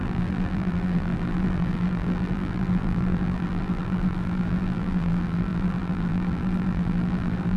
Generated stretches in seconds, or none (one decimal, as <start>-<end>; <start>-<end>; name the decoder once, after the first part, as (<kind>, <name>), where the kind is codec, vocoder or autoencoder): 0.0-7.6 (vocoder, BigVGAN v2)